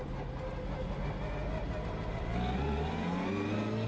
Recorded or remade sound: recorded